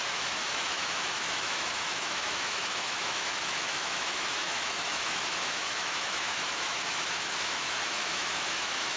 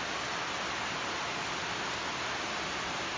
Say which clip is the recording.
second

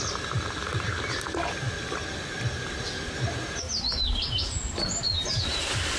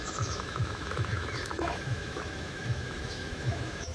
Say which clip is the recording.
first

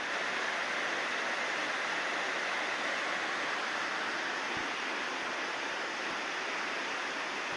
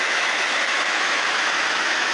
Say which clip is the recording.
first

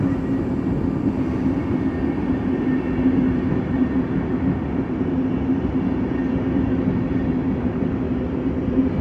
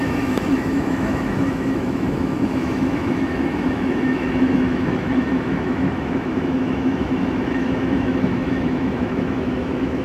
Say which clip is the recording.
first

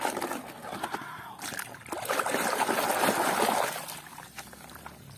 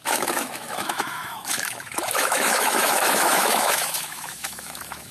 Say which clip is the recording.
first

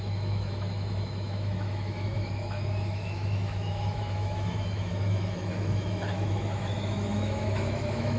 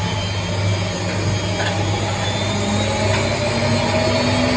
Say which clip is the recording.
second